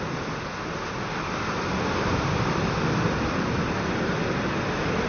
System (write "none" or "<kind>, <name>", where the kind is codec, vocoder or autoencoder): none